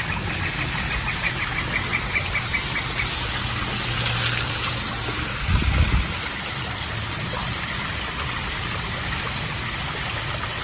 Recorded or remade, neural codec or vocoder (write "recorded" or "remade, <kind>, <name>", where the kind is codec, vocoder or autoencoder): recorded